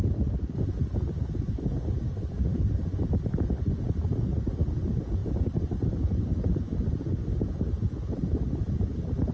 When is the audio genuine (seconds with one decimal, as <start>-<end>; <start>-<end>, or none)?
0.0-2.5; 3.3-5.2; 8.5-9.3